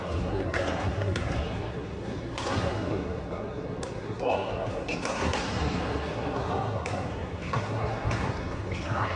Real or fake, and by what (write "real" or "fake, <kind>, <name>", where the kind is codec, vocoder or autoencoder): fake, codec, SNAC